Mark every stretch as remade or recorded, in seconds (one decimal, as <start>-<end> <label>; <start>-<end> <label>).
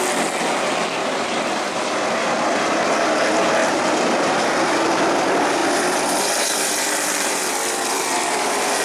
0.0-1.0 recorded; 1.0-3.0 remade; 3.0-3.6 recorded; 3.6-4.6 remade; 4.6-5.6 recorded; 5.6-8.0 remade; 8.0-8.8 recorded